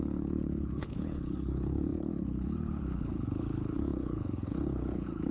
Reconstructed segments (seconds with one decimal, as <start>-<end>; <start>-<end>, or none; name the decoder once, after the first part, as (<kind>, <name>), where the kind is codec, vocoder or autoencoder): 0.0-5.3 (codec, HILCodec)